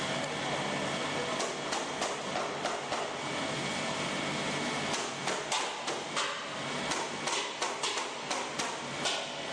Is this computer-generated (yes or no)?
no